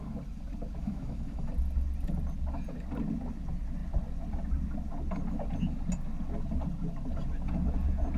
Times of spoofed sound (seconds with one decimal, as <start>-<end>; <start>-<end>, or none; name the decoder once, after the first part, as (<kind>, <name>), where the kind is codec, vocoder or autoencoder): 0.8-1.5 (autoencoder, DAC-VAE)